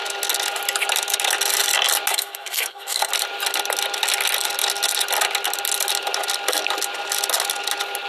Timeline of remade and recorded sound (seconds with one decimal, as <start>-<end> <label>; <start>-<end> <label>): 0.0-2.1 recorded; 2.1-3.1 remade; 3.1-8.1 recorded